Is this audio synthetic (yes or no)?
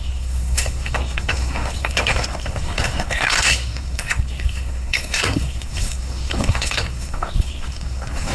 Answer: yes